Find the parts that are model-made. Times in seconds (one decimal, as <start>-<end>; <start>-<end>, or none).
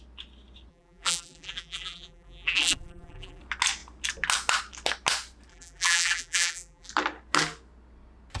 0.7-3.4; 5.5-6.9